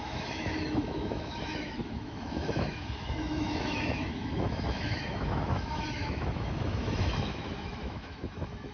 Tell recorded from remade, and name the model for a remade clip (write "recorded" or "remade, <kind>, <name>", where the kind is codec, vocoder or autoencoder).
remade, autoencoder, DAC-VAE